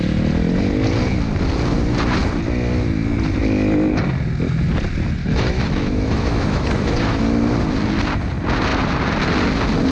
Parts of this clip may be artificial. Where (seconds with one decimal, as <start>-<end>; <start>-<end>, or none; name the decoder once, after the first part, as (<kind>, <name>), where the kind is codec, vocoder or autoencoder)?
5.2-7.2 (autoencoder, DAC-VAE)